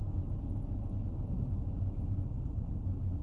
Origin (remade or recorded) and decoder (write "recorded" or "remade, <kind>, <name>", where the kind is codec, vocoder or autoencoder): recorded